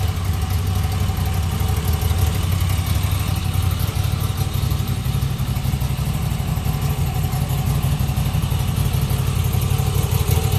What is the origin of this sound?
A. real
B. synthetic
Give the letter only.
A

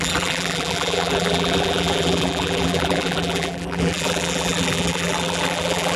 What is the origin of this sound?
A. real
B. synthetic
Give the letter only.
B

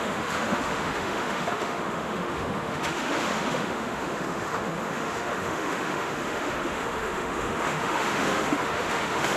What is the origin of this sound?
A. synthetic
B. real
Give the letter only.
A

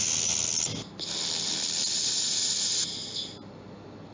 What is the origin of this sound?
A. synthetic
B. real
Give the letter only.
B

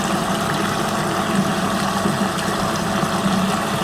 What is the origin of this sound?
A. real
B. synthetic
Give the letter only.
A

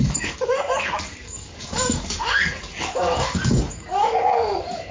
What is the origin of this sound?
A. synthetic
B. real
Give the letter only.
A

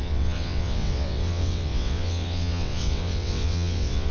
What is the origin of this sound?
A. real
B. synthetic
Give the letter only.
B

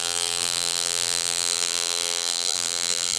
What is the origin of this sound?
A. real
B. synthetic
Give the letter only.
B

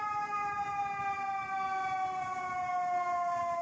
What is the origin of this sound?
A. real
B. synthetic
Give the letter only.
A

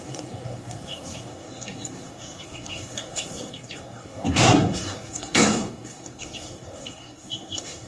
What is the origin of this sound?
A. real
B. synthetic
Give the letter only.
B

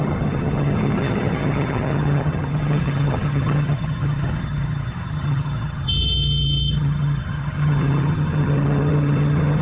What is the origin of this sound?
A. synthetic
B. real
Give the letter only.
A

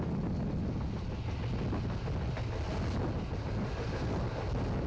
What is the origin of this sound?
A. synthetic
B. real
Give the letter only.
B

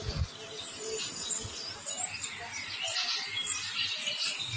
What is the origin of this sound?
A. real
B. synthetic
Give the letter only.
A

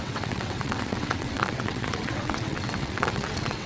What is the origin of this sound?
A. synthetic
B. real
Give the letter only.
A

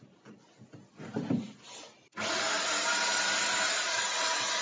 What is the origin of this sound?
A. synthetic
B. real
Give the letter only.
B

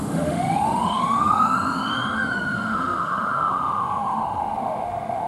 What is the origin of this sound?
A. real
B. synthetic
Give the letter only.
B